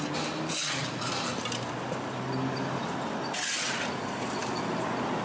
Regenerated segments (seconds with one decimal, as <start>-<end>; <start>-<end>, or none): none